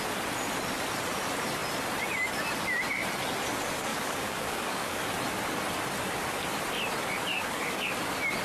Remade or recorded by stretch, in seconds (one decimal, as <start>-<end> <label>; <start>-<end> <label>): 0.0-3.9 recorded; 3.9-5.0 remade; 5.0-7.3 recorded; 7.3-7.9 remade; 7.9-8.4 recorded